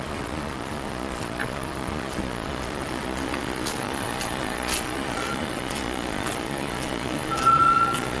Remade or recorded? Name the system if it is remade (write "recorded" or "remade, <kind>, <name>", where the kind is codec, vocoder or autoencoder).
remade, vocoder, Vocos